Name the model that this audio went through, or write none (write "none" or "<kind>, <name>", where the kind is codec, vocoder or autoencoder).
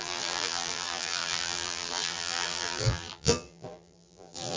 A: vocoder, BigVGAN v2